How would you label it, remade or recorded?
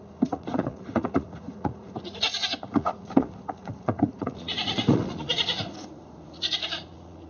remade